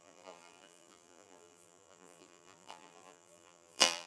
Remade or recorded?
remade